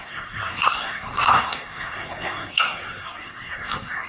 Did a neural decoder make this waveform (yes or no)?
yes